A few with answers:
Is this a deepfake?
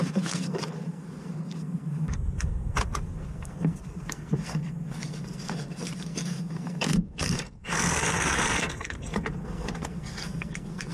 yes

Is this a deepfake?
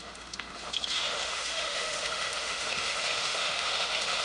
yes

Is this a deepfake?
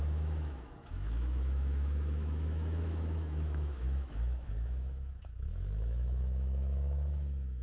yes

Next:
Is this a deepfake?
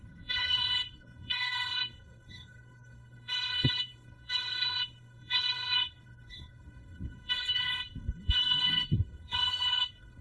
yes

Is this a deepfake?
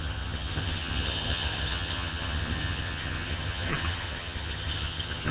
yes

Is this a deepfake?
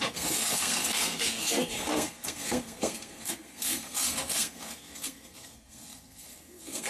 yes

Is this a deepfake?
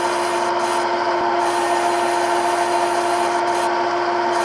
no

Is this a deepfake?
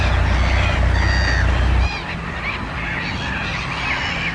no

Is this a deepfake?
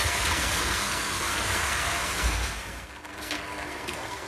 yes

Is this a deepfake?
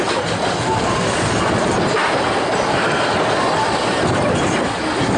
no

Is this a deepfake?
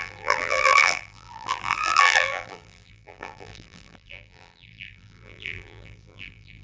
yes